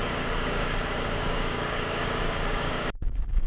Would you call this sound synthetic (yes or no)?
yes